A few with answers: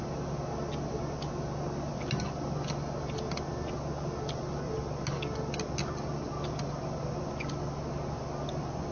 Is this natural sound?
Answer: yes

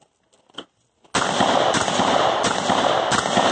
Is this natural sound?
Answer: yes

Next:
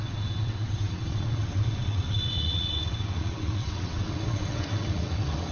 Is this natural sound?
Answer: no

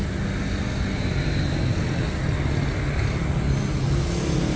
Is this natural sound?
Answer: yes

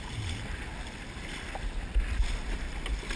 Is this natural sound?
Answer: yes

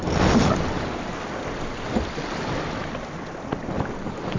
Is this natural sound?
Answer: yes